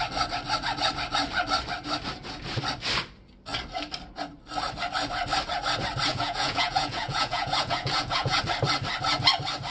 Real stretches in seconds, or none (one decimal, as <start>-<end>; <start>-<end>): 0.0-6.1; 8.4-9.7